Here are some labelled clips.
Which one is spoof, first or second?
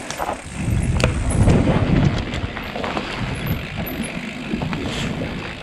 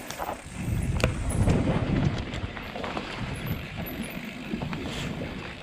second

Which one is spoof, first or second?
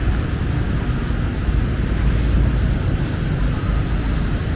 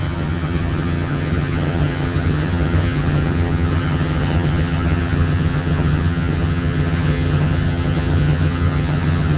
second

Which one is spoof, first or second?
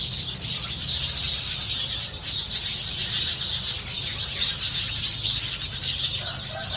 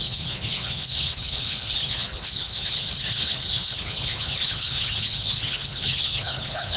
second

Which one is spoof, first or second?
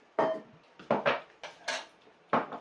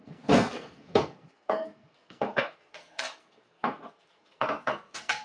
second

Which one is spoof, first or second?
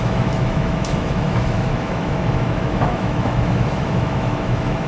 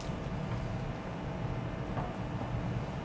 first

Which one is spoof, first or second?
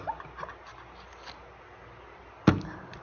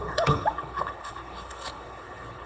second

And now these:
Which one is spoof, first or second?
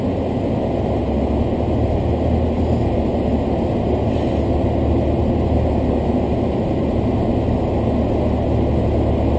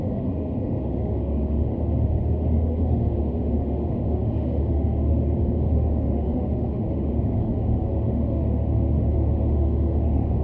second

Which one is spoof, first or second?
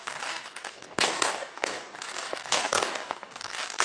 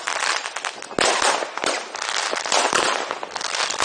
first